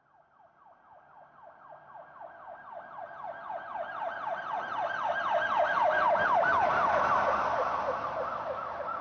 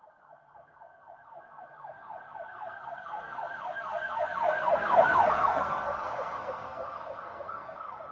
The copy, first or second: second